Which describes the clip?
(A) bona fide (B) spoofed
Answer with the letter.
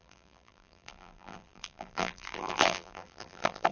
B